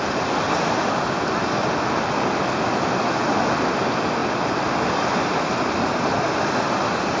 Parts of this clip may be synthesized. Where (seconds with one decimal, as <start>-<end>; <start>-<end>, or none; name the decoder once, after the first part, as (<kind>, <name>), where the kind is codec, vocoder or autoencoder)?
none